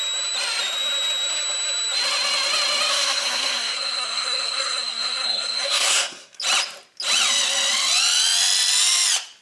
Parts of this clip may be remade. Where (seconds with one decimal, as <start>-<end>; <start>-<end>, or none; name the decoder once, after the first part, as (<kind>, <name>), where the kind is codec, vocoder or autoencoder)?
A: 2.9-6.4 (codec, SNAC)